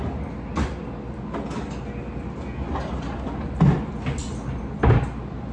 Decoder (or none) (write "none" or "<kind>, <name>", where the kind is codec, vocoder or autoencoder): none